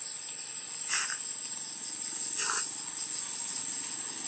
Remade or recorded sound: recorded